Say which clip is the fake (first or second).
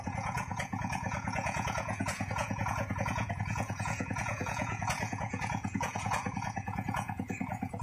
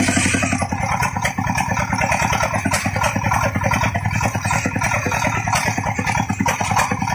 first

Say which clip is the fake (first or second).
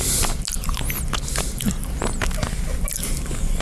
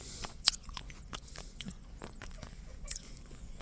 second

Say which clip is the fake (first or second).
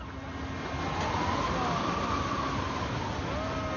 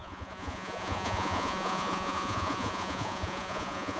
second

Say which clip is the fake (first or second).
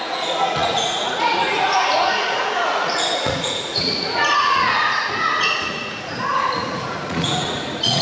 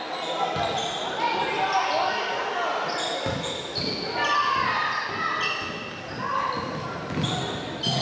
first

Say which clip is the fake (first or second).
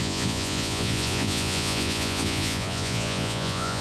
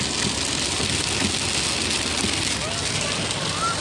first